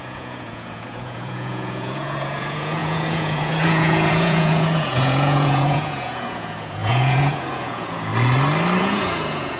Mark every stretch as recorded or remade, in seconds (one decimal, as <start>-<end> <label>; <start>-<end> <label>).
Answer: 0.0-8.1 remade; 8.1-8.8 recorded; 8.8-9.6 remade